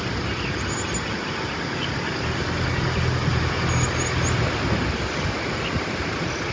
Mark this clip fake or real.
real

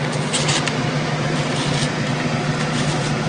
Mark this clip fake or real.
real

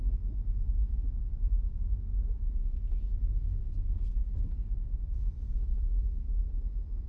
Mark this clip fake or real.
real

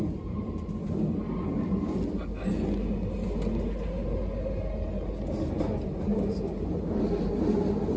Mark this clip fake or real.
real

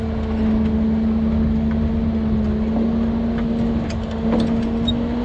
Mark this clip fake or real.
real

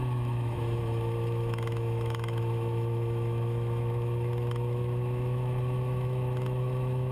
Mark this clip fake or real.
fake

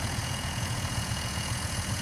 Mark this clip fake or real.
fake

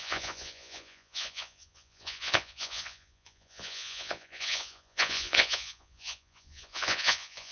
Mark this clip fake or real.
fake